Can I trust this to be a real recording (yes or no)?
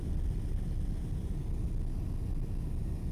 yes